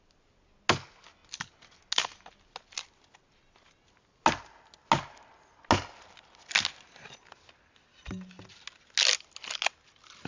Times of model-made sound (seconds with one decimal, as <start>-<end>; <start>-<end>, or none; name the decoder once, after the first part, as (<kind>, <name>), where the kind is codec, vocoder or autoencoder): none